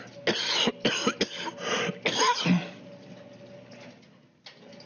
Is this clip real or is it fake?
real